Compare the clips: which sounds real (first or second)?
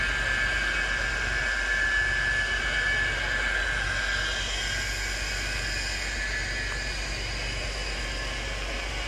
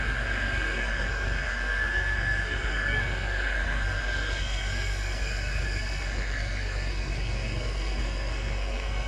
first